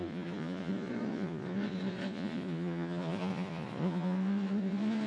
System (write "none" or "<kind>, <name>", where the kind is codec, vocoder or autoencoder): vocoder, Vocos